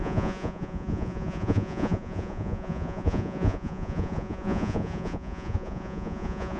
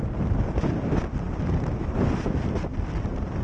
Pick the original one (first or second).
second